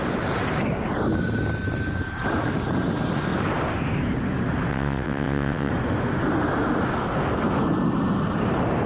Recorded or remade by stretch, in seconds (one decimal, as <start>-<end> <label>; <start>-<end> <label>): 0.0-4.7 recorded; 4.7-5.7 remade; 5.7-8.9 recorded